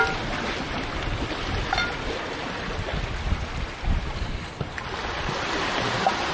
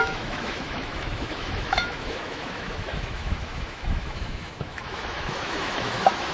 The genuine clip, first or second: first